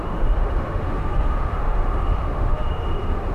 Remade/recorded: remade